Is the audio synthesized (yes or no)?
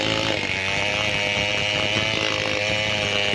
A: no